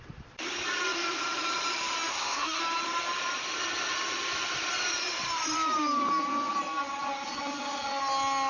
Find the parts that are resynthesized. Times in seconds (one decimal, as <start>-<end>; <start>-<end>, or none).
2.1-2.6